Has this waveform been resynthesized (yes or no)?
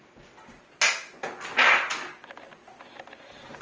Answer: no